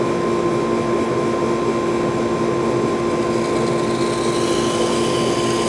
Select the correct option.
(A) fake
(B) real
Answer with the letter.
B